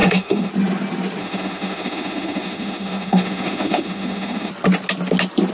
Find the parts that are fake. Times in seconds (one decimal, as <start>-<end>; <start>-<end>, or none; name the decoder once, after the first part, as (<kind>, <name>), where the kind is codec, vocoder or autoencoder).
0.0-0.5 (autoencoder, DAC-VAE); 1.2-4.5